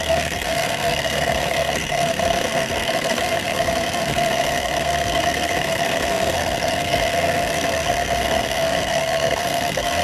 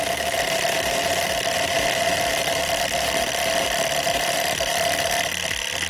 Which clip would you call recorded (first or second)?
second